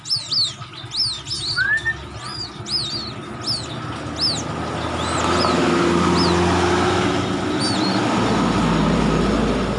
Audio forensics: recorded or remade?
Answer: recorded